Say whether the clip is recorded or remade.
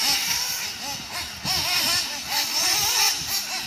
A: recorded